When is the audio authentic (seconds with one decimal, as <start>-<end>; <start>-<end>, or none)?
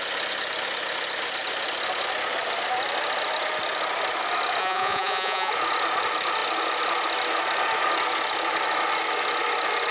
0.0-4.6; 5.5-9.9